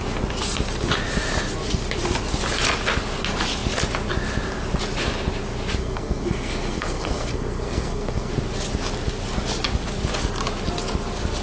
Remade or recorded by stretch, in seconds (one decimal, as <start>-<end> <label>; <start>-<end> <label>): 0.0-5.8 recorded; 5.8-8.3 remade; 8.3-11.4 recorded